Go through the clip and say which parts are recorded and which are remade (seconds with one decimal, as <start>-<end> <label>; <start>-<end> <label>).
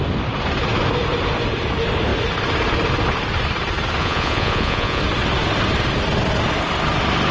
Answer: 0.0-4.0 recorded; 4.0-5.0 remade; 5.0-7.3 recorded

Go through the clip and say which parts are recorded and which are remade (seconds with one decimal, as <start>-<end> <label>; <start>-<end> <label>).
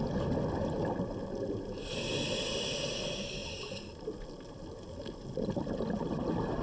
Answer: 0.0-6.6 recorded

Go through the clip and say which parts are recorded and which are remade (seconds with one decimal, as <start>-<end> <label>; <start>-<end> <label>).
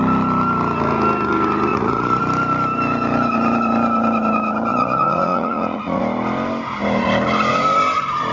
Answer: 0.0-1.7 recorded; 1.7-2.2 remade; 2.2-4.7 recorded; 4.7-6.0 remade; 6.0-8.3 recorded